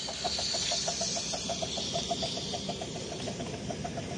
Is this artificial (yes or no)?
no